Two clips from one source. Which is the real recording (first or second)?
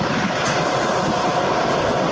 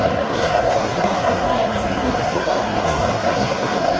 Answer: first